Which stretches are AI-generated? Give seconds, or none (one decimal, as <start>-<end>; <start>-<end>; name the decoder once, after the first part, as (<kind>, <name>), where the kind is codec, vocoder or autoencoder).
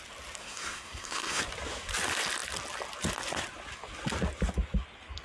0.4-1.4 (codec, SNAC)